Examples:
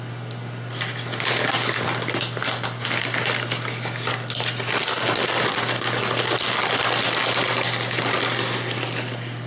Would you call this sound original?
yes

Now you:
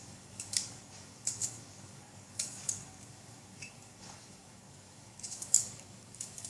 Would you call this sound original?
no